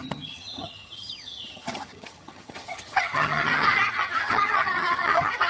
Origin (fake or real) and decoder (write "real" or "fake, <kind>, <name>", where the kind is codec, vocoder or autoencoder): fake, vocoder, HiFi-GAN